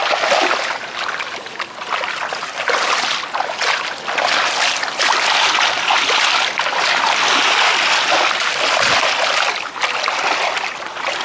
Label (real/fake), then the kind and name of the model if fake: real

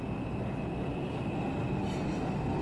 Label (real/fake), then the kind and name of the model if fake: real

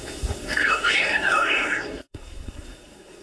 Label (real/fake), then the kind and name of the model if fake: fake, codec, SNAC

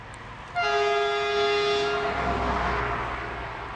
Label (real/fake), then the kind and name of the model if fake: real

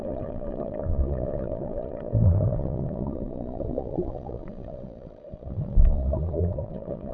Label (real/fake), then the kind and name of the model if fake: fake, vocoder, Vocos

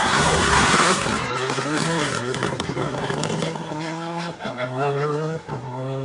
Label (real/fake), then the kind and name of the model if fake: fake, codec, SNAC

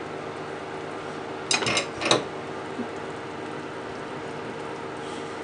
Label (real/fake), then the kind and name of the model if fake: real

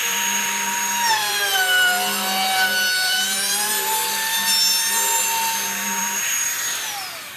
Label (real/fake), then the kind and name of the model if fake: fake, vocoder, BigVGAN v2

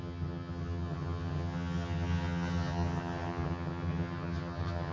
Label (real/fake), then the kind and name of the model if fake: fake, vocoder, HiFi-GAN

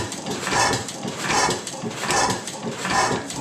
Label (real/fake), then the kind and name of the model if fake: fake, vocoder, BigVGAN v2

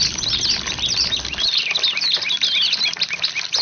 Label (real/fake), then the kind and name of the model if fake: real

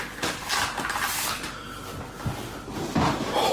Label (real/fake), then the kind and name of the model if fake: real